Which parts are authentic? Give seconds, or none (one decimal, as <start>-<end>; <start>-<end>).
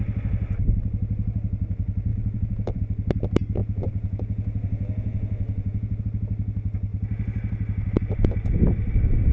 0.0-2.1; 2.8-3.6; 6.0-9.3